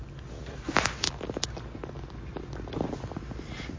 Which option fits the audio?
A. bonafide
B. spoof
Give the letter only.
A